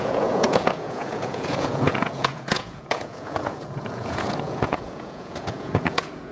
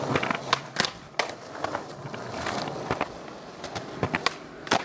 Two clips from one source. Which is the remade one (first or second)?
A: first